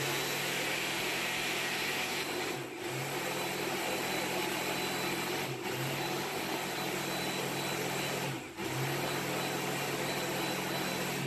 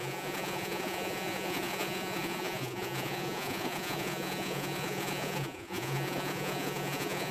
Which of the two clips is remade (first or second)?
second